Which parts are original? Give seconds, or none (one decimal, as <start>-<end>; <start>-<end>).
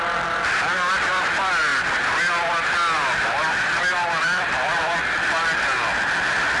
0.0-6.6